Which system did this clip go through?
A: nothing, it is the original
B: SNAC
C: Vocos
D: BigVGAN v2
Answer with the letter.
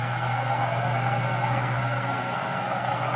B